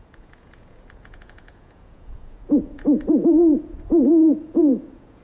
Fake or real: fake